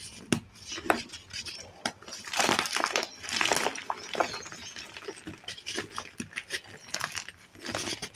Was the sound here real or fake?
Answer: real